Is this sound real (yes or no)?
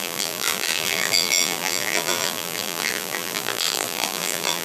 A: no